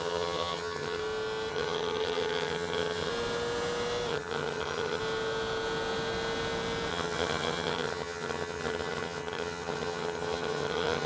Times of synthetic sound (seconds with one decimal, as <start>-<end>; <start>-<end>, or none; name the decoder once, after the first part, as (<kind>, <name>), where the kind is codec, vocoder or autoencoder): 0.0-1.0 (vocoder, HiFi-GAN); 1.5-3.1; 4.1-5.0; 6.9-11.1